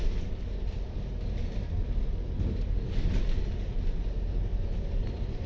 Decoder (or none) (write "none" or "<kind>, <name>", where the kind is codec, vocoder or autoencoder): none